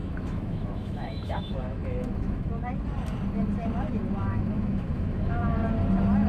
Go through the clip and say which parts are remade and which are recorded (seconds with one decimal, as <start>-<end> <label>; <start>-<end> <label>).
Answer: 0.0-2.5 remade; 2.5-4.2 recorded; 4.2-5.4 remade; 5.4-6.3 recorded